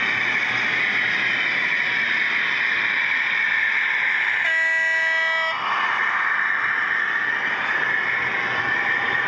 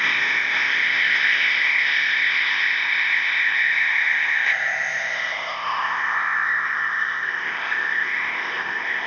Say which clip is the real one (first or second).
first